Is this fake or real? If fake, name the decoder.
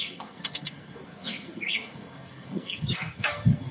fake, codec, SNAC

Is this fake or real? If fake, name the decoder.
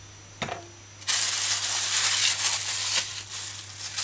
real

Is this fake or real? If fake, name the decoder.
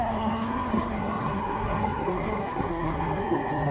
fake, codec, SNAC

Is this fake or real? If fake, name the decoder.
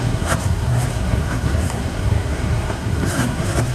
fake, codec, SNAC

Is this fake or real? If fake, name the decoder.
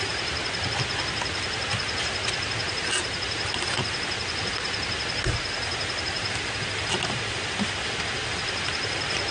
real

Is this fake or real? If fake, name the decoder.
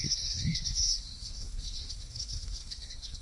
fake, codec, SNAC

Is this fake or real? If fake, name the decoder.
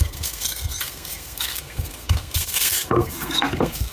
fake, codec, SNAC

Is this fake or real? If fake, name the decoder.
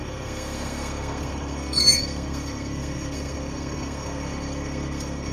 fake, codec, SNAC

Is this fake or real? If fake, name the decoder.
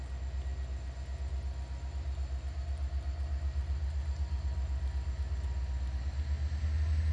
real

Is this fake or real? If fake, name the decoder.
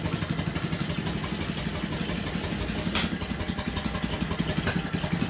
real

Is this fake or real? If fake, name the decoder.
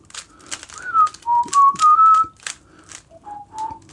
real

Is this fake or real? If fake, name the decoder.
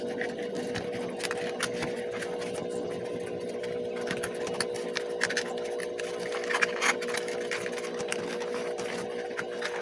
real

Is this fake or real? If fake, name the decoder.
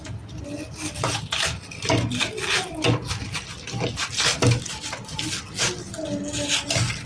real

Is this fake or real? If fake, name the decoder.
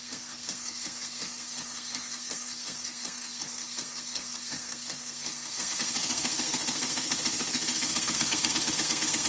fake, codec, SNAC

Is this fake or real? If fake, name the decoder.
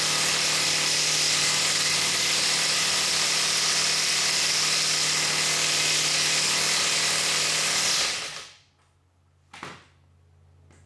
real